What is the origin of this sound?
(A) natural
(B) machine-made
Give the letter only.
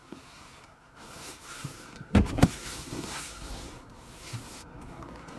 B